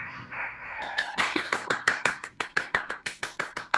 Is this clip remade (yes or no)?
yes